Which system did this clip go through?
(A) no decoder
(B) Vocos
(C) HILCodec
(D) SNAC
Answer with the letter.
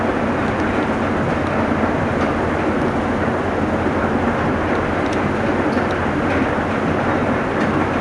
A